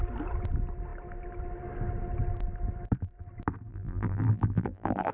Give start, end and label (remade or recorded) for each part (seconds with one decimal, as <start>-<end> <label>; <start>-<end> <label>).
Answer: 0.0-3.7 recorded; 3.7-5.1 remade